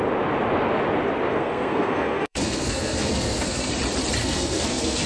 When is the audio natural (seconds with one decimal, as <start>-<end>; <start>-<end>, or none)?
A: 0.0-1.3; 3.7-4.2